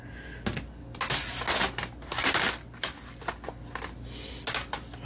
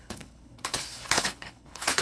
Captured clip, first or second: first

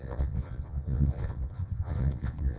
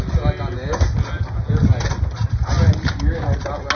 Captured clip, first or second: second